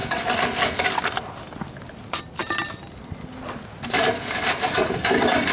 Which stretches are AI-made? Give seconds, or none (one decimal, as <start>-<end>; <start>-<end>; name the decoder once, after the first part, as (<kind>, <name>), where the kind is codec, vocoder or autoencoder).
none